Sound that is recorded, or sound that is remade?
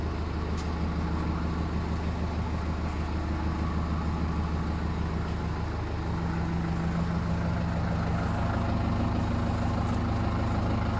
recorded